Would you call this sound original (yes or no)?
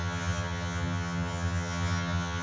no